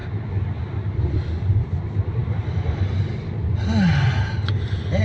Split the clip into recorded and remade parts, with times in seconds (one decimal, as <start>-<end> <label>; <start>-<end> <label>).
0.0-5.0 recorded